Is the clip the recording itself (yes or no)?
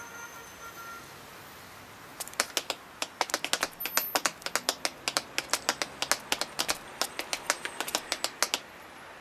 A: yes